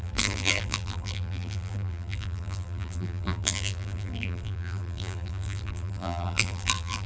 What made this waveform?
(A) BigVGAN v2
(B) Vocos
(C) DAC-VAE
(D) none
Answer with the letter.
A